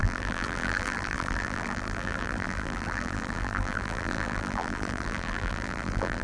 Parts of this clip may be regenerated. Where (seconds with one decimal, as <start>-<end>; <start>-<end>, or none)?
0.0-6.2